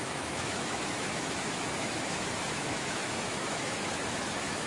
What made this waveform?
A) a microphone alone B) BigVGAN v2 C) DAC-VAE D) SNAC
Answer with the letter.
C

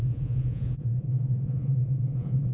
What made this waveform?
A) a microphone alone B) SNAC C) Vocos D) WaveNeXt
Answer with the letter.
C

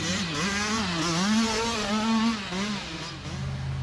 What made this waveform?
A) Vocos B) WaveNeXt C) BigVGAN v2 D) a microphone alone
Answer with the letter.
D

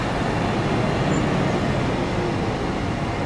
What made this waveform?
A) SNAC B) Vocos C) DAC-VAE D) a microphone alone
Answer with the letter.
D